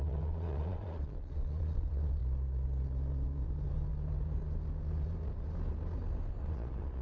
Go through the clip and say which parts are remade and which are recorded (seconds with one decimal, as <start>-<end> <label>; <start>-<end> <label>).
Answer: 0.0-2.2 remade; 2.2-6.4 recorded; 6.4-7.0 remade